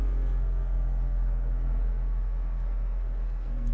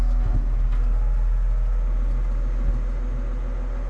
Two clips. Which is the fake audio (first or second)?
first